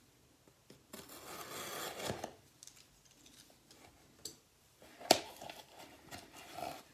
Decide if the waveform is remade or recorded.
recorded